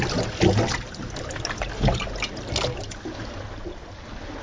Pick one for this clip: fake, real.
real